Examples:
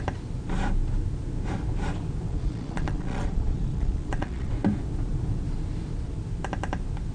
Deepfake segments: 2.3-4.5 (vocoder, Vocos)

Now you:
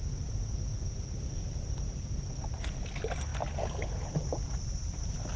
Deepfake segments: none

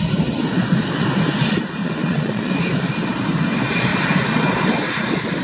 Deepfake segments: 1.8-2.5 (vocoder, Vocos)